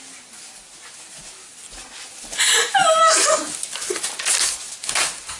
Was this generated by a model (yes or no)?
no